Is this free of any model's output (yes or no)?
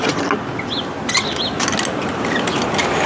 yes